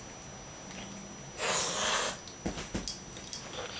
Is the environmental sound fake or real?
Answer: real